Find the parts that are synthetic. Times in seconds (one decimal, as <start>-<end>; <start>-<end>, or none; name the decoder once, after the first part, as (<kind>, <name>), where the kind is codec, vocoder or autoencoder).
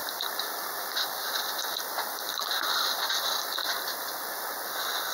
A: 0.0-3.1 (vocoder, BigVGAN v2); 3.6-4.1